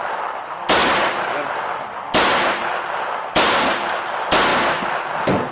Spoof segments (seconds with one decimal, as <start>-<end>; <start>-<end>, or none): none